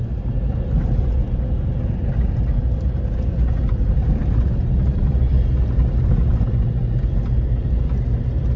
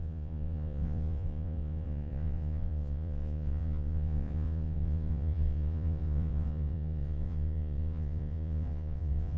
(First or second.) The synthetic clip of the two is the second